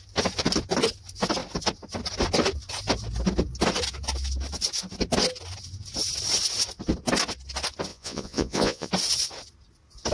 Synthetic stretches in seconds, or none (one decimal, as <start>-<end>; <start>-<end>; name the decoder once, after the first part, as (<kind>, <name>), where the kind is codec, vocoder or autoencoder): 7.9-8.9 (vocoder, Vocos)

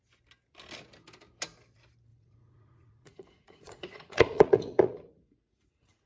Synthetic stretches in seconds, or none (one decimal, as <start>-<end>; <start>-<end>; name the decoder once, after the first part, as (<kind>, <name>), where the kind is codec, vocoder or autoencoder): 2.1-6.1 (vocoder, Vocos)

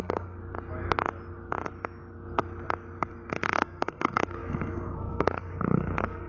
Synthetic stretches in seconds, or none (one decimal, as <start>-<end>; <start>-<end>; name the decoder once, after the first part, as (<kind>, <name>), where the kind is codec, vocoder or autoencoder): 0.0-0.4 (codec, SNAC); 3.6-6.3

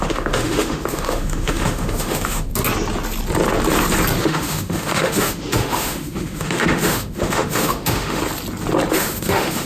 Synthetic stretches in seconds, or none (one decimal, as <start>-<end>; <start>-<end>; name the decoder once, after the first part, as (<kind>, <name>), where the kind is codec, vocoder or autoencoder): 0.0-2.5 (autoencoder, DAC-VAE); 4.2-8.2; 8.9-9.7